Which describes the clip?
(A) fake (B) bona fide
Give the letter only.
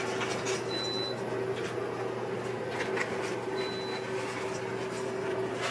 B